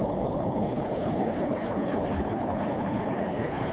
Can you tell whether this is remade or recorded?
remade